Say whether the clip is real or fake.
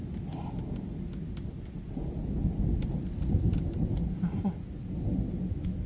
real